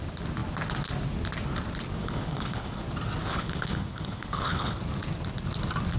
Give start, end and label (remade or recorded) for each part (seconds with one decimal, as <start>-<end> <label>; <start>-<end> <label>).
0.0-2.0 recorded; 2.0-2.8 remade; 2.8-3.3 recorded; 3.3-4.8 remade; 4.8-6.0 recorded